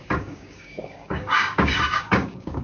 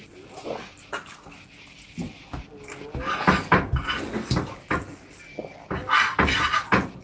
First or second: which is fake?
first